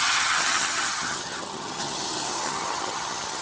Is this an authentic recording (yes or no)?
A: no